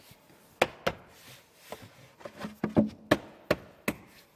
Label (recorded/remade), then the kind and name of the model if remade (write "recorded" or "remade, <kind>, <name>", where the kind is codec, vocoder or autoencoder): recorded